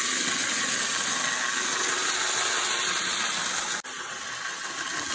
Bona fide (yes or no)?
yes